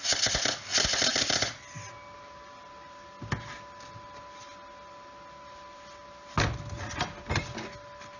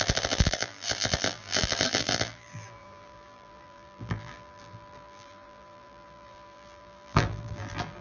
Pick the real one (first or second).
first